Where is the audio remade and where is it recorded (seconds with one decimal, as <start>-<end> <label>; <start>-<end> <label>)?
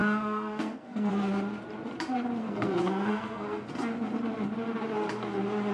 0.0-1.1 remade; 1.1-2.4 recorded; 2.4-3.7 remade; 3.7-5.7 recorded